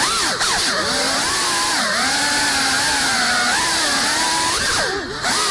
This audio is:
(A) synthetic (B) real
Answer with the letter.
B